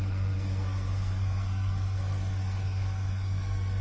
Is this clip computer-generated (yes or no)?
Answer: yes